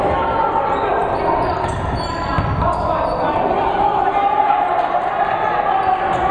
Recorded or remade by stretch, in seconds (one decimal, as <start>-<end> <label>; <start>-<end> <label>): 0.0-6.3 recorded